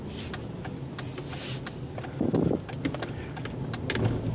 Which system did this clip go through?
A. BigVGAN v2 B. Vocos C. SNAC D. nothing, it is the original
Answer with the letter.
D